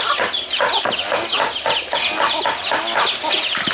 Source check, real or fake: real